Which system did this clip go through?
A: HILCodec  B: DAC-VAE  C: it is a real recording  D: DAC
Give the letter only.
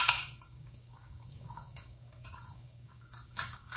D